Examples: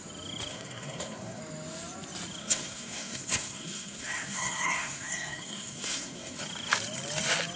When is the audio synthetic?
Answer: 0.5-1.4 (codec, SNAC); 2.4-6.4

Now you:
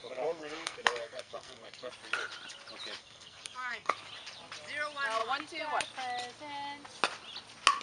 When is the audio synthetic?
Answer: 0.0-1.9 (codec, SNAC); 3.0-3.9

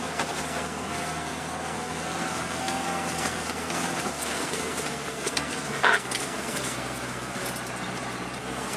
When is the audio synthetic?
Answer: 0.0-7.4 (codec, SNAC); 8.4-8.8

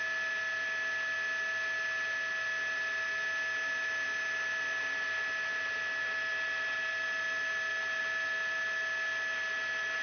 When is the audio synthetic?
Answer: none

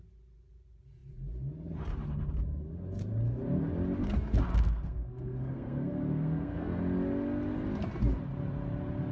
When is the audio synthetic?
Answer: 4.5-6.8 (codec, SNAC)